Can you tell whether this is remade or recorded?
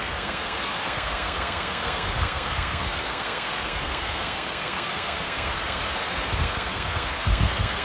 remade